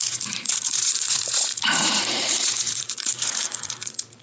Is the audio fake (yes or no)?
yes